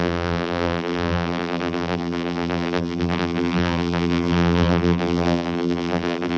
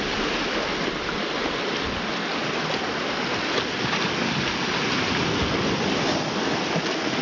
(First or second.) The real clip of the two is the second